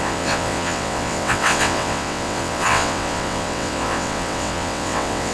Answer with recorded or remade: remade